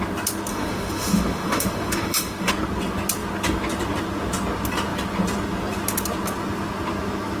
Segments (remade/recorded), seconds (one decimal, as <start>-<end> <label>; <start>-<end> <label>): 0.0-0.5 recorded; 0.5-2.5 remade; 2.5-7.4 recorded

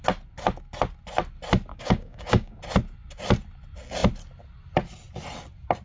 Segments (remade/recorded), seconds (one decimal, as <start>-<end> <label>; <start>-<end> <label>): 0.0-1.7 recorded; 1.7-2.6 remade; 2.6-5.8 recorded

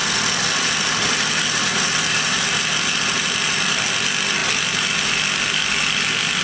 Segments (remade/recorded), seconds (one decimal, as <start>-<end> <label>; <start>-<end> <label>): 0.0-6.4 recorded